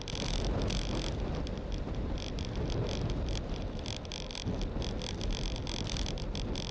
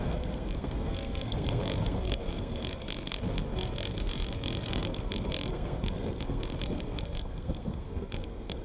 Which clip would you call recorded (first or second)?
first